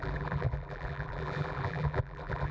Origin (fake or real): fake